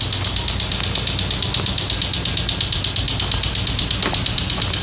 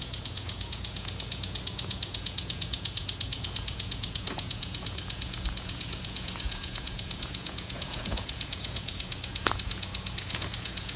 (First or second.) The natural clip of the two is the first